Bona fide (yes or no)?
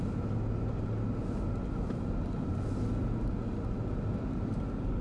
yes